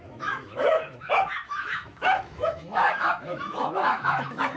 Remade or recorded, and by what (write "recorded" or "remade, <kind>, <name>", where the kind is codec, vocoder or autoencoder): remade, autoencoder, DAC-VAE